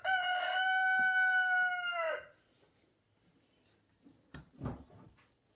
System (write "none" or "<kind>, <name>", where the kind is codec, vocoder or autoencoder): none